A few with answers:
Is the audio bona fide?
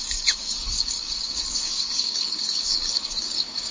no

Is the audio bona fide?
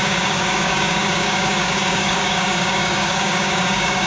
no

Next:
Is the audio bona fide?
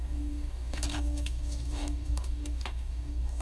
no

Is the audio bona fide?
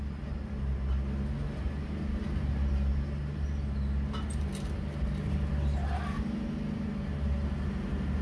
yes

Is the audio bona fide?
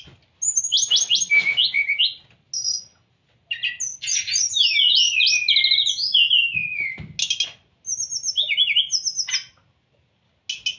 yes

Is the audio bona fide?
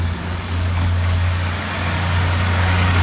no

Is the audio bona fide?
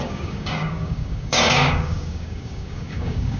no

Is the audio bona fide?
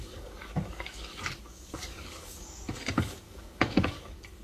no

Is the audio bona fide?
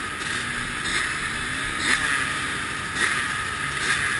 yes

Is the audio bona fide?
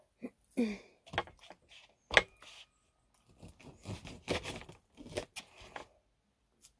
yes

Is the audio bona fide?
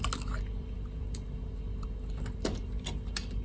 yes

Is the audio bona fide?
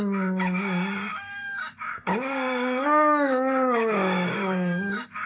no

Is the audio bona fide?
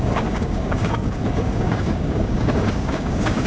no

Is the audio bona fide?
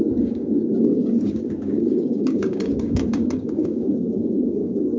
no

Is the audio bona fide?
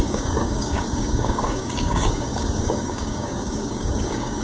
no